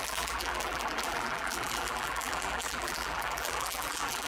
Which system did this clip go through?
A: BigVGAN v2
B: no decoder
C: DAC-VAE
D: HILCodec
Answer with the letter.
A